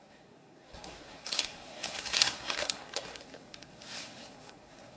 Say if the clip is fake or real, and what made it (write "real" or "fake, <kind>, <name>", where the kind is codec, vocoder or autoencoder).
fake, codec, SNAC